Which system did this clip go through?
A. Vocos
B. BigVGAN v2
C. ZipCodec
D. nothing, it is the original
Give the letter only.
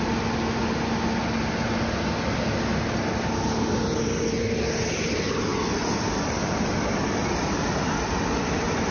D